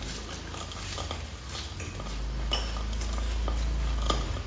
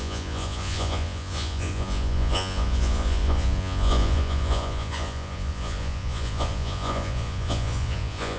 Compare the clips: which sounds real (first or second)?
first